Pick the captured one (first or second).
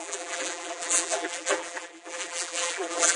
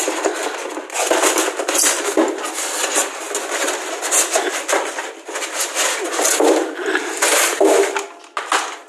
second